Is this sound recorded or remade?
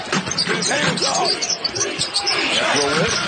recorded